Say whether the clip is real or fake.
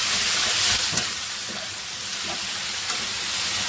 real